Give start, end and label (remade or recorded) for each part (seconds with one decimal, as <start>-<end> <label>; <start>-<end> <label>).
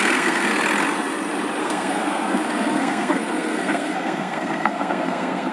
0.0-0.5 remade; 0.5-1.6 recorded; 1.6-5.5 remade